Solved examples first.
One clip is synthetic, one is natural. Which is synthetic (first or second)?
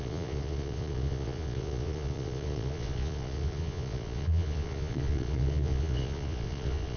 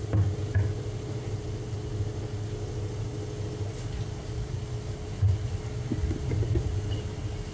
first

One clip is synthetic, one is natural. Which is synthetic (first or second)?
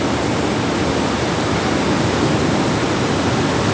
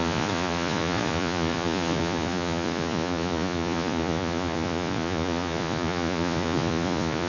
second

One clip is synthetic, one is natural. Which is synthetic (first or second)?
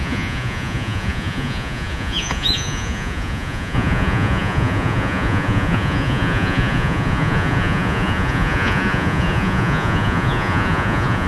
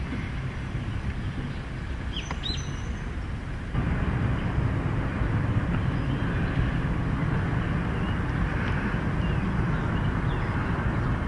first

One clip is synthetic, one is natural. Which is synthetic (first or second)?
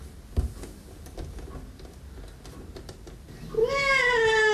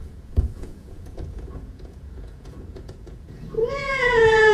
second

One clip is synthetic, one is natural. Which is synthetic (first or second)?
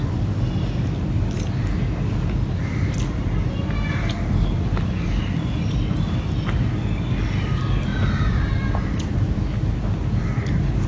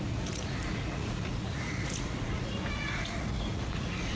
second